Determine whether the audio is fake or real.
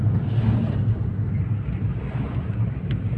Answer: real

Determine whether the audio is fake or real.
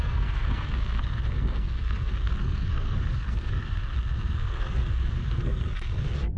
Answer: fake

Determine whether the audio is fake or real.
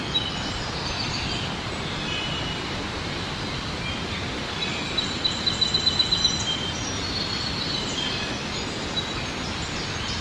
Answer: real